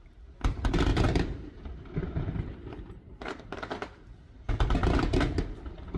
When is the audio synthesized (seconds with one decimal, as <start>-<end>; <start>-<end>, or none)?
0.9-4.5